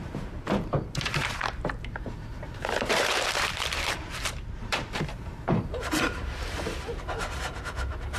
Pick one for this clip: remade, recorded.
remade